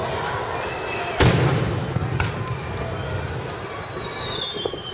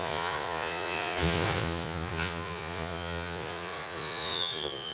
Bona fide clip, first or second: first